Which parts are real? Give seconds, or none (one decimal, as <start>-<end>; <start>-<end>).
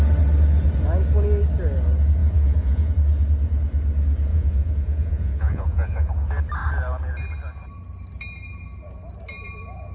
0.0-2.2; 2.9-4.3; 6.1-9.9